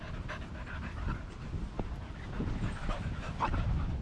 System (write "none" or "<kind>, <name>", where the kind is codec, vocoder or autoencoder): none